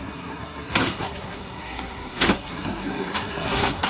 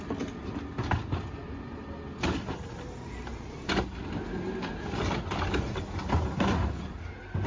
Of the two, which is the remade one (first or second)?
first